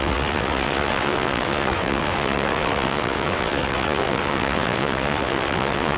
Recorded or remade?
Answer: remade